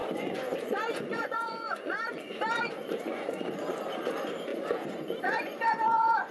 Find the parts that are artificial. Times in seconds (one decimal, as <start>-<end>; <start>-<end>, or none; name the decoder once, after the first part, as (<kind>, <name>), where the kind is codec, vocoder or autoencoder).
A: 0.0-3.8 (vocoder, Vocos); 4.5-6.3